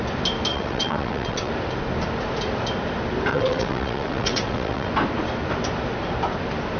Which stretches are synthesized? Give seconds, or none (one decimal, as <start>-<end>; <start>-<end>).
0.5-1.5; 3.3-4.9